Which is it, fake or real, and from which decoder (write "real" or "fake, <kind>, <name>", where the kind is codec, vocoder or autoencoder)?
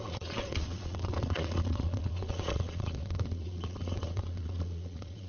fake, vocoder, Vocos